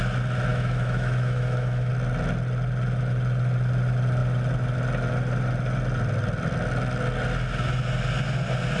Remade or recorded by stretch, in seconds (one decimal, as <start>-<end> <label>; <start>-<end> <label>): 0.0-0.5 recorded; 0.5-1.9 remade; 1.9-8.8 recorded